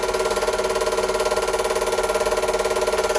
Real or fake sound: real